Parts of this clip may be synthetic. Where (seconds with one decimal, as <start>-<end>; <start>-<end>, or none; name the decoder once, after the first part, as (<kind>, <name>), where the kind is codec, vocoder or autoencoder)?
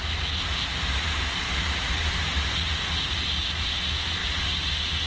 none